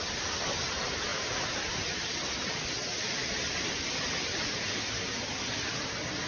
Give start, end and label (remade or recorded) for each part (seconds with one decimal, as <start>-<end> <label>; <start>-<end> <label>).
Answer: 0.0-6.3 recorded